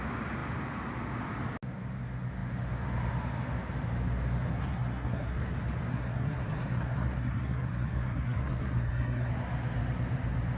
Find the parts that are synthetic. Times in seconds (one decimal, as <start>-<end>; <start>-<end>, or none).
4.5-5.5; 5.9-9.3

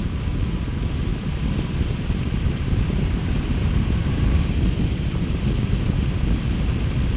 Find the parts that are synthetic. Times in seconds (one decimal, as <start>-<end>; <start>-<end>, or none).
1.1-5.4

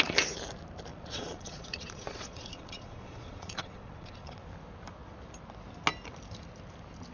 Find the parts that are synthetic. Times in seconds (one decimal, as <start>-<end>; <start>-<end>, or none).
0.9-4.4

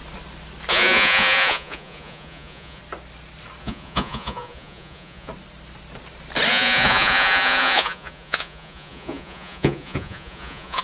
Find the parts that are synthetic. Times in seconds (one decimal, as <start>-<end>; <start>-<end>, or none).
0.7-2.8; 3.6-5.3; 6.5-10.8

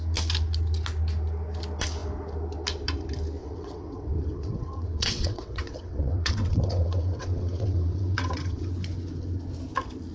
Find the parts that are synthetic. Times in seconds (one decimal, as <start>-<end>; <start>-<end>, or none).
3.4-8.7

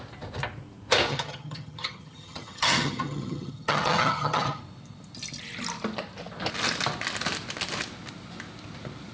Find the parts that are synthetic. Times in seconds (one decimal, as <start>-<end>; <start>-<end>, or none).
1.1-4.6

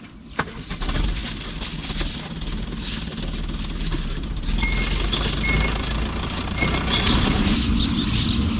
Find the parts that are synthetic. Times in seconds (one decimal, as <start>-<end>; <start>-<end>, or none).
none